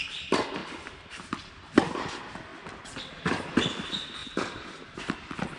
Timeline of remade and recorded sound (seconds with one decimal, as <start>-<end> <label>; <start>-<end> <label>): 0.0-0.6 recorded; 0.6-1.3 remade; 1.3-4.2 recorded; 4.2-5.0 remade; 5.0-5.6 recorded